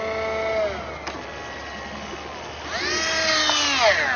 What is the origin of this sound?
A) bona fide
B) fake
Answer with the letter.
A